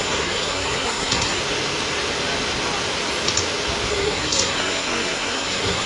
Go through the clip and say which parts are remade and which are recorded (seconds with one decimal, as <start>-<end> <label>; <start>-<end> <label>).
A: 0.0-1.4 remade; 1.4-3.9 recorded; 3.9-5.9 remade